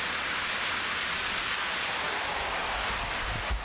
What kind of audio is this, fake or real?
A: real